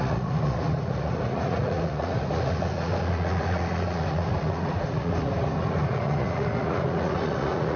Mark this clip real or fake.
fake